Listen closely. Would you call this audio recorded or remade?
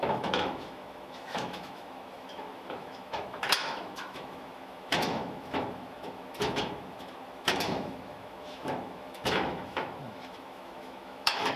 remade